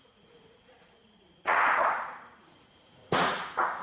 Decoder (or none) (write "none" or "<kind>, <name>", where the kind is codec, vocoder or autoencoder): vocoder, Vocos